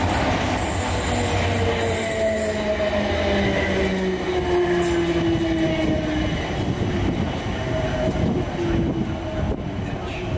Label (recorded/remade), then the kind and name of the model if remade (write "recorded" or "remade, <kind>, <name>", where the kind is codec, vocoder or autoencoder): recorded